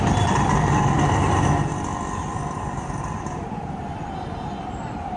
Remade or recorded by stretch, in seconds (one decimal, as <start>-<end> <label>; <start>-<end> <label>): 0.0-2.2 recorded; 2.2-3.8 remade; 3.8-5.2 recorded